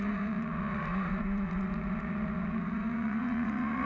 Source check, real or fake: fake